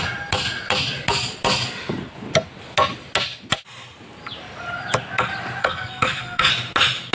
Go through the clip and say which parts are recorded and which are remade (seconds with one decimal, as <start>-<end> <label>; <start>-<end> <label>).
0.0-5.6 recorded; 5.6-6.5 remade; 6.5-7.1 recorded